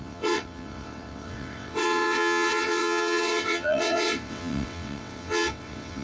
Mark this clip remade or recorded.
remade